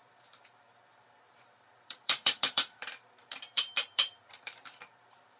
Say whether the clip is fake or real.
fake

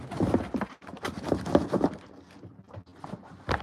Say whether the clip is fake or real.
real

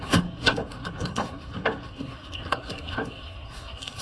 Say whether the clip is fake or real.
fake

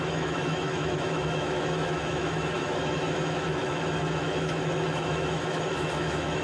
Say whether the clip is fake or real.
fake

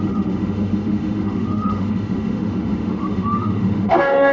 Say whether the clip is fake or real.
fake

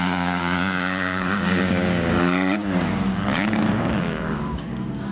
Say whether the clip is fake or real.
fake